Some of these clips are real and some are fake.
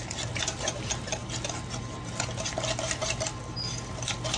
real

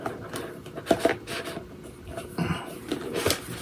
real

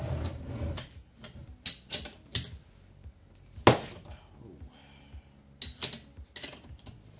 real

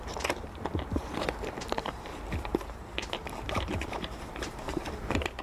fake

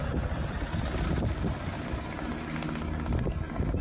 real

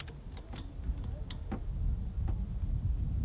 real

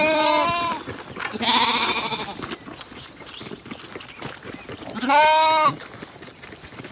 real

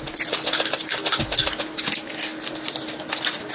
real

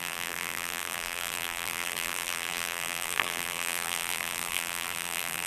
fake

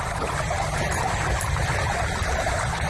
real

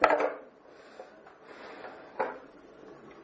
real